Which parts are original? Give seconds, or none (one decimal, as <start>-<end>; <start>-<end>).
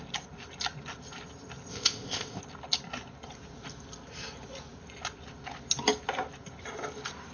0.0-1.7; 2.4-7.3